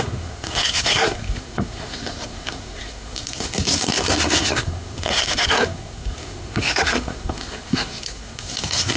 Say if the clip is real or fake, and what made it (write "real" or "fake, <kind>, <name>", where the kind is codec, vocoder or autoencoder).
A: fake, codec, SNAC